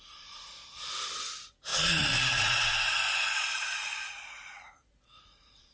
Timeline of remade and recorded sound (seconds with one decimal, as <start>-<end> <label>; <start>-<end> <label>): 0.0-0.6 remade; 0.6-1.2 recorded; 1.2-5.7 remade